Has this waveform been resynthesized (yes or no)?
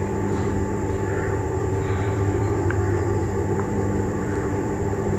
yes